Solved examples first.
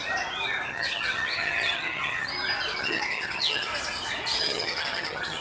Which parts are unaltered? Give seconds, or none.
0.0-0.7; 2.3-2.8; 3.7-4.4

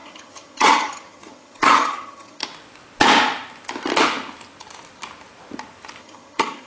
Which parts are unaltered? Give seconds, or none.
2.4-6.0

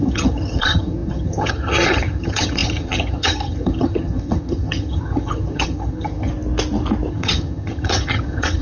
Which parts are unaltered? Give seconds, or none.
6.3-7.1

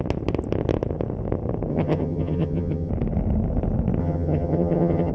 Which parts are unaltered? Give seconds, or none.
0.0-1.7; 2.9-4.0

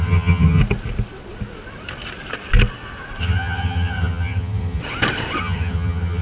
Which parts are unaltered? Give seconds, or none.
0.6-3.2; 4.8-5.4